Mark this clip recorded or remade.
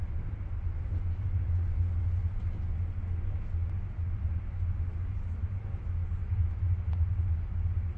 recorded